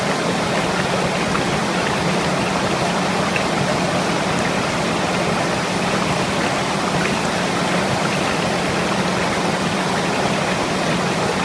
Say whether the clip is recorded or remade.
recorded